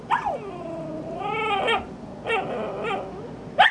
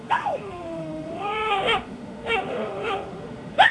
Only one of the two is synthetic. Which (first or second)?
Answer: second